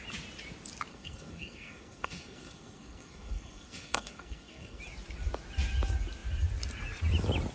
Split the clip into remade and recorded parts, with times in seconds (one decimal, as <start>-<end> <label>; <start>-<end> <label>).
0.0-0.9 recorded; 0.9-4.8 remade; 4.8-7.5 recorded